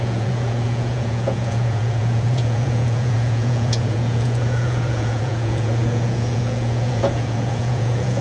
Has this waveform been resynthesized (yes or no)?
yes